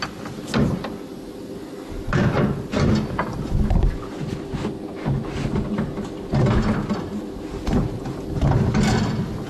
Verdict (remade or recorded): recorded